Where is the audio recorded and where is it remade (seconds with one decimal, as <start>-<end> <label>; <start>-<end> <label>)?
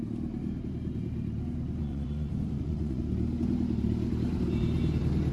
0.0-1.8 recorded; 1.8-3.0 remade; 3.0-5.3 recorded